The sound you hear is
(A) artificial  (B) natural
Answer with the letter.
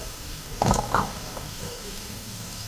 A